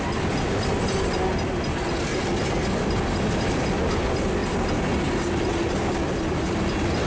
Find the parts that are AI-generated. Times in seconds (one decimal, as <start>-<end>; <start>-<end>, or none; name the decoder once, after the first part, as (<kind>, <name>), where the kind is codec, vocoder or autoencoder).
none